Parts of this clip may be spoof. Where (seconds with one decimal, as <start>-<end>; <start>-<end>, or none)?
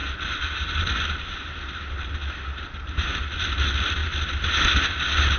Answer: none